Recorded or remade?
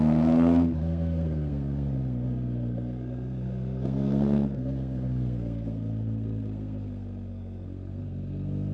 remade